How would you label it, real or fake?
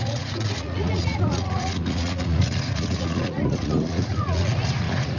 fake